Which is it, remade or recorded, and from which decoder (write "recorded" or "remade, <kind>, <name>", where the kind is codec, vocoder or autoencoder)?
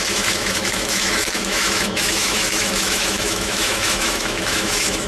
remade, autoencoder, DAC-VAE